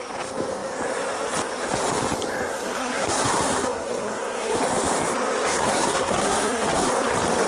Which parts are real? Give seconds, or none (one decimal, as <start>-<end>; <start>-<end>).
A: 0.0-2.5; 4.6-5.5; 6.9-7.5